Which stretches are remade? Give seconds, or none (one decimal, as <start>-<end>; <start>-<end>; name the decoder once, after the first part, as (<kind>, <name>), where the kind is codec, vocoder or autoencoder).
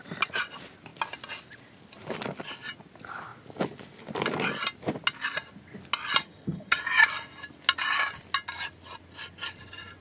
6.2-6.8 (vocoder, HiFi-GAN)